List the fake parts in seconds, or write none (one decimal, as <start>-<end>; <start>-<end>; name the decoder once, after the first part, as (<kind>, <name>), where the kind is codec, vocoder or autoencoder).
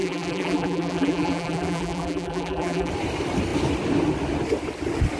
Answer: 0.0-2.9 (vocoder, BigVGAN v2)